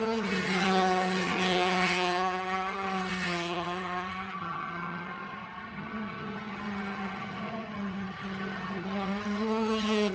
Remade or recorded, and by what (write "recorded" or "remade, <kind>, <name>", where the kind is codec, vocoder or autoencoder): remade, vocoder, HiFi-GAN